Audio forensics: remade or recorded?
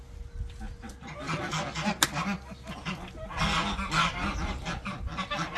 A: recorded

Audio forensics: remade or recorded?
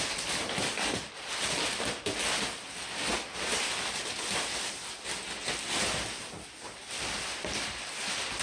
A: recorded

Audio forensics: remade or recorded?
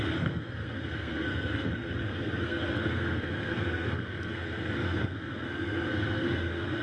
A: remade